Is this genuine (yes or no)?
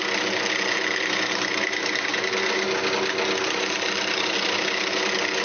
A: yes